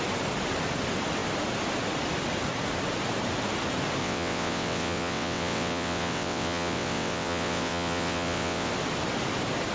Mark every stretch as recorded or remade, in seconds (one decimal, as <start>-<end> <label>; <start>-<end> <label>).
0.0-4.0 recorded; 4.0-8.7 remade; 8.7-9.7 recorded